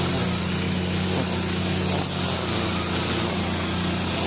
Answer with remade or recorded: recorded